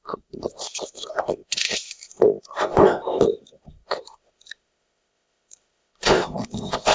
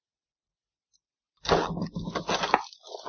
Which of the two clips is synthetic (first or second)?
first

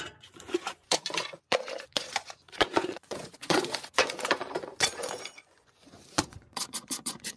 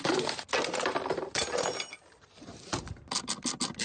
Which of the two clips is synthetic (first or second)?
first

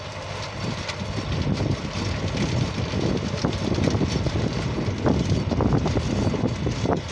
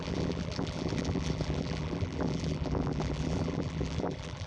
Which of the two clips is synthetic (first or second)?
second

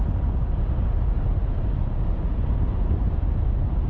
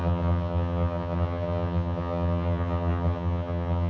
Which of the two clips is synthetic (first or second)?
second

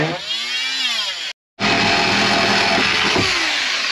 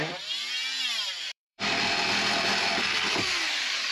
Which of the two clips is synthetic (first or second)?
second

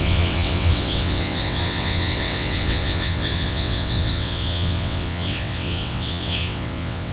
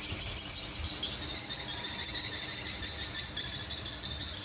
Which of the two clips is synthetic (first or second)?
first